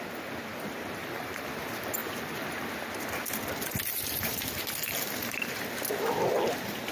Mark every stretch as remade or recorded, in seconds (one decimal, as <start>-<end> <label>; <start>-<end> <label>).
0.0-6.9 recorded